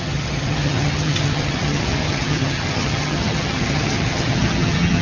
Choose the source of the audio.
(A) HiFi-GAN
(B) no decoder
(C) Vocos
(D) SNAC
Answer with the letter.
A